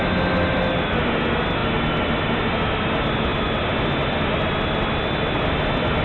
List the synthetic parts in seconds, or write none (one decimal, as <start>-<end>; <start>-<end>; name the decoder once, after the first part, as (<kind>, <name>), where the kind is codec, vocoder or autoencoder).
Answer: none